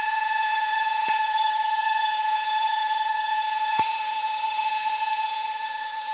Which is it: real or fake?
fake